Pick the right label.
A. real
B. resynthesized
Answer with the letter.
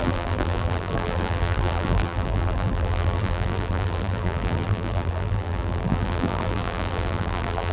B